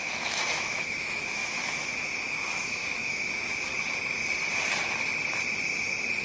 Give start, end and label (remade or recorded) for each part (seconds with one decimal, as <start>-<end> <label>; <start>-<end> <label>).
0.0-3.7 remade; 3.7-6.2 recorded